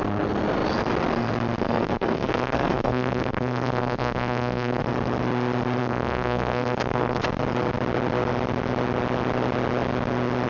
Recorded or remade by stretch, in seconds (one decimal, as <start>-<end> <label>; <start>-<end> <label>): 0.0-1.6 recorded; 1.6-4.8 remade; 4.8-5.8 recorded; 5.8-7.2 remade; 7.2-10.5 recorded